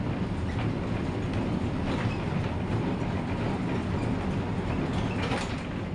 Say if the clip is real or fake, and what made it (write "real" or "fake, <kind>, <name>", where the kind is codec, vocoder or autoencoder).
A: real